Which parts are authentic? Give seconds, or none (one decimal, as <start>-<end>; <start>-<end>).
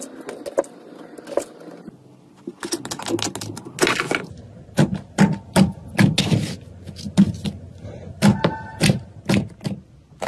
0.0-10.3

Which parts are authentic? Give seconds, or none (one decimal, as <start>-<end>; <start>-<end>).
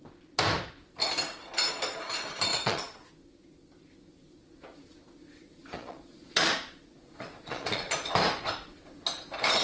0.0-2.5; 3.1-5.4; 8.1-9.6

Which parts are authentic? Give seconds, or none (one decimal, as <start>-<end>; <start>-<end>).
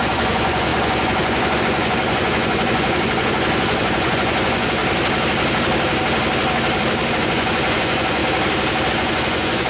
4.8-7.1; 8.2-8.9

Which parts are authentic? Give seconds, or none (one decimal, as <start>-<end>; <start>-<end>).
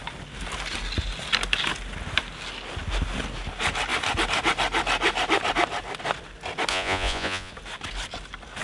0.0-6.7; 7.5-8.6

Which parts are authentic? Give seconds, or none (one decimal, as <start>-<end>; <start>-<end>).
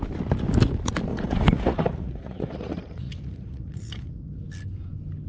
0.0-1.1; 4.3-5.3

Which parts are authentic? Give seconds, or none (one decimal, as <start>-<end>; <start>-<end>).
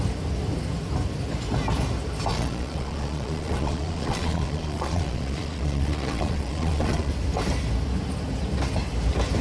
0.0-2.3; 7.1-9.4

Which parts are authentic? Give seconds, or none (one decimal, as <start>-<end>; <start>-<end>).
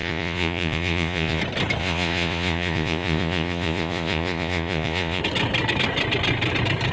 1.4-1.8; 5.2-6.9